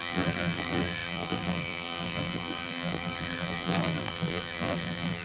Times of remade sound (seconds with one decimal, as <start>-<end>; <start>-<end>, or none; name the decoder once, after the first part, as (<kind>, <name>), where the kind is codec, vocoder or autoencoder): 0.0-5.2 (vocoder, BigVGAN v2)